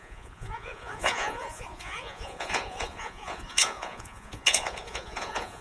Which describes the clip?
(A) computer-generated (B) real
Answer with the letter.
A